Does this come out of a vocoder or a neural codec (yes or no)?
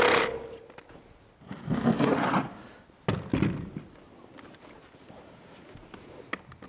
no